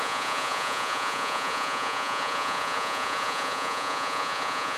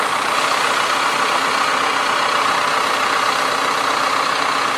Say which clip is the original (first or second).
second